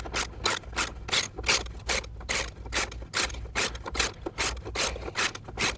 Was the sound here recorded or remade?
recorded